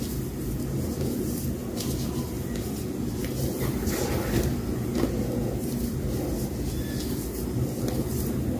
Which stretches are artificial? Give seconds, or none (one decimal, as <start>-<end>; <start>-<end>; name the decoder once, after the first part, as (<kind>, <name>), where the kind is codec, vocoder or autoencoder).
none